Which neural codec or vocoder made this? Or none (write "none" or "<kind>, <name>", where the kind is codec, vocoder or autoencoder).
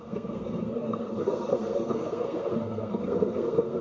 codec, SNAC